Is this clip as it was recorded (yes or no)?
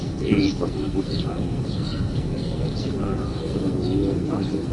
no